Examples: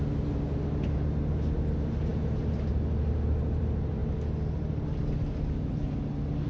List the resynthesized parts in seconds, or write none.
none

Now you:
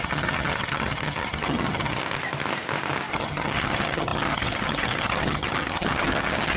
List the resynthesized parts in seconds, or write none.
0.0-2.0 (vocoder, HiFi-GAN); 3.1-6.6